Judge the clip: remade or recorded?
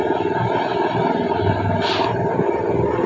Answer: recorded